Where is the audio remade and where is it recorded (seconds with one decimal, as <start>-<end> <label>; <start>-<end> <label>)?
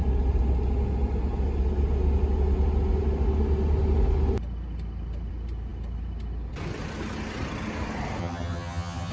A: 0.0-8.2 recorded; 8.2-9.1 remade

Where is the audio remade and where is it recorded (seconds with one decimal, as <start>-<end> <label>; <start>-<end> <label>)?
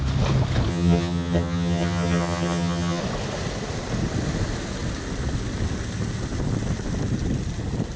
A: 0.0-0.7 recorded; 0.7-3.0 remade; 3.0-8.0 recorded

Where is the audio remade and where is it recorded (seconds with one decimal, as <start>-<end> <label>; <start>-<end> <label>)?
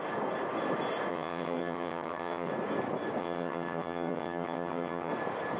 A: 0.0-1.1 recorded; 1.1-2.5 remade; 2.5-3.2 recorded; 3.2-5.1 remade; 5.1-5.6 recorded